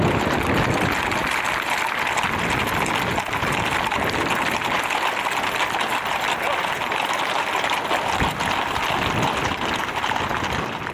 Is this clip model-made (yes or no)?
no